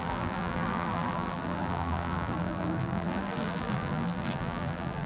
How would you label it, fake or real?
fake